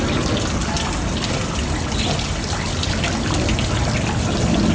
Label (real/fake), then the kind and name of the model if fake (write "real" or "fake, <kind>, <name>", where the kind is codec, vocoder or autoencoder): real